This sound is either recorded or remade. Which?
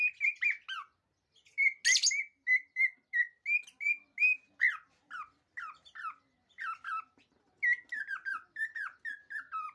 recorded